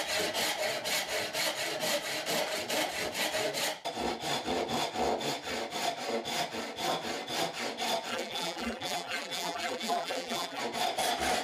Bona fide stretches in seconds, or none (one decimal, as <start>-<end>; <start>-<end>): 0.0-8.1; 10.6-11.4